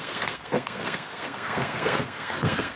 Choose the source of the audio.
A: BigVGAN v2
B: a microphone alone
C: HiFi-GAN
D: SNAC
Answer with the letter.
D